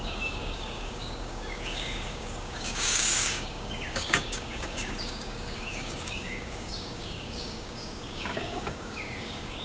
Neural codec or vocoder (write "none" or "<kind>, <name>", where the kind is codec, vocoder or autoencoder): codec, DAC